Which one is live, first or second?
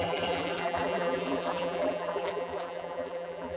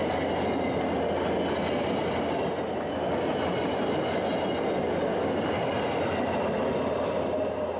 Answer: second